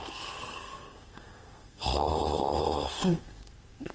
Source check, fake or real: fake